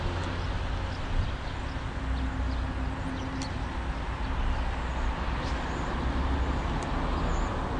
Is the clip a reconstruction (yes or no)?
no